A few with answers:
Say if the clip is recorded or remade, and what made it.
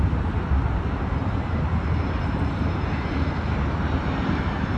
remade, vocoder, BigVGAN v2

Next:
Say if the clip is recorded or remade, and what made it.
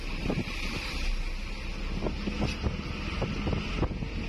recorded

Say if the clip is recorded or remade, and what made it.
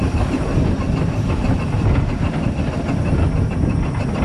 remade, vocoder, BigVGAN v2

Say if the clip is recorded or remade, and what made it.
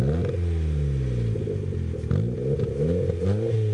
recorded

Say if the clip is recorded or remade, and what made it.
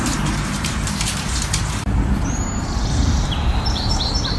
remade, vocoder, BigVGAN v2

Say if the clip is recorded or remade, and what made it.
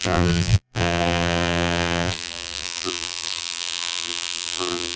remade, vocoder, BigVGAN v2